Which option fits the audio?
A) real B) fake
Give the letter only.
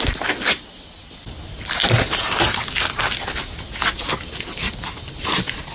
A